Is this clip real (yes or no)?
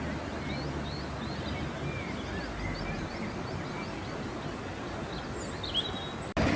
yes